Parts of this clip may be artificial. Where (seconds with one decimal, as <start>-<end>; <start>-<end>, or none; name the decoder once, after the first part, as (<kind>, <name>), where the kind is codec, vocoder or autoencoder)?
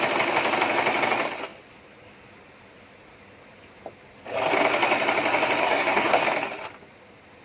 5.6-6.2 (codec, SNAC)